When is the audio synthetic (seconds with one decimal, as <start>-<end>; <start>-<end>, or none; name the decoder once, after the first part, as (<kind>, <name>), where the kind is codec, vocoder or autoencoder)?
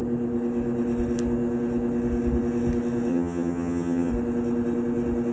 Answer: 3.1-4.1 (vocoder, HiFi-GAN)